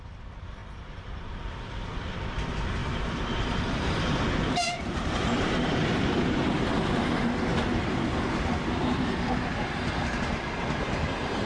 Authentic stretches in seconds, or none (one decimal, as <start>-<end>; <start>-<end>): 0.0-0.6; 2.0-2.8; 6.7-11.5